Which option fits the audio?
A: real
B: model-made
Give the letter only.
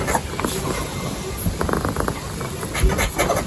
A